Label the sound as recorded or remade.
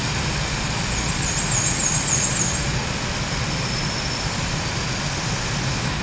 recorded